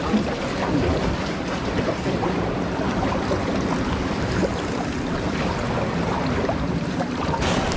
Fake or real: real